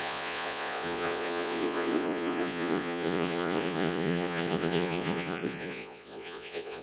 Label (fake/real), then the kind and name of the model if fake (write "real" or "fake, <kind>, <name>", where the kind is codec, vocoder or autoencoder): fake, vocoder, Vocos